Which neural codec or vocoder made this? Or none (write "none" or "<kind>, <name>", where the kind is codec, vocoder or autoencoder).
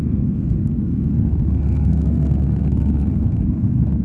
codec, SNAC